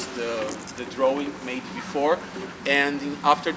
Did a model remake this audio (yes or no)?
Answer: no